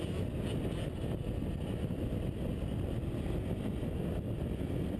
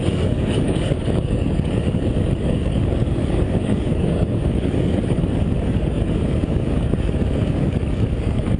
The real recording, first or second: first